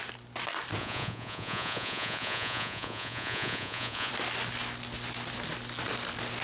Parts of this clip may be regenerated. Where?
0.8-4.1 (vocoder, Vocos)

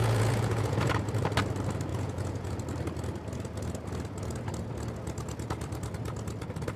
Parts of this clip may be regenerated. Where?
0.0-0.9 (vocoder, Vocos); 1.9-2.5

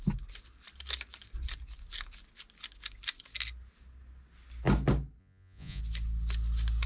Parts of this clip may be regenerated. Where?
5.2-5.8 (vocoder, Vocos)

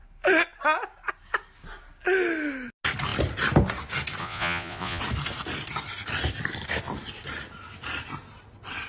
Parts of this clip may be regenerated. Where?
4.2-5.0 (vocoder, Vocos)

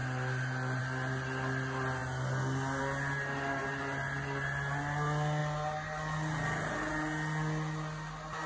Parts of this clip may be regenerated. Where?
none